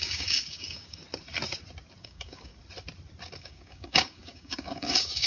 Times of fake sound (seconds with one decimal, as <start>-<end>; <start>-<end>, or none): 0.0-1.0; 2.0-2.5; 3.4-5.3